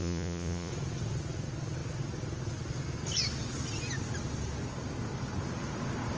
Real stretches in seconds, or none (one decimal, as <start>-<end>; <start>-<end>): 0.7-6.2